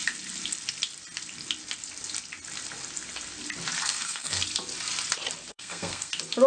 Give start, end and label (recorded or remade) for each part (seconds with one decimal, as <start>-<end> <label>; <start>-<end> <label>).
0.0-3.8 recorded; 3.8-4.4 remade; 4.4-5.5 recorded; 5.5-6.1 remade; 6.1-6.5 recorded